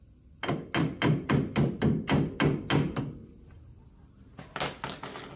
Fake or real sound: real